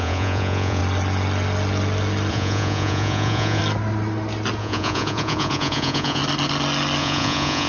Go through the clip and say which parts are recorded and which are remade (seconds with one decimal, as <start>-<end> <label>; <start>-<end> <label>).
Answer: 0.0-0.8 remade; 0.8-2.3 recorded; 2.3-3.6 remade; 3.6-4.6 recorded; 4.6-6.2 remade; 6.2-7.0 recorded; 7.0-7.7 remade